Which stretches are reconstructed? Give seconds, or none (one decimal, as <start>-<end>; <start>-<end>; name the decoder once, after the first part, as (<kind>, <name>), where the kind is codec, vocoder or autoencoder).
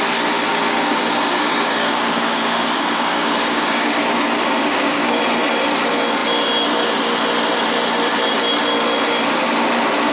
0.5-4.0 (codec, DAC); 4.4-5.2